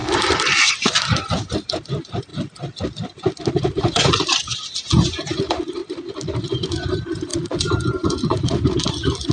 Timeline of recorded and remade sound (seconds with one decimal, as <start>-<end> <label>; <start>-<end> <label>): 0.0-2.3 remade; 2.3-3.5 recorded; 3.5-5.8 remade; 5.8-6.4 recorded; 6.4-9.3 remade